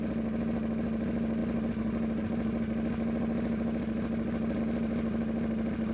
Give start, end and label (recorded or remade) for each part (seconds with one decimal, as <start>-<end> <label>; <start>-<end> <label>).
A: 0.0-5.9 recorded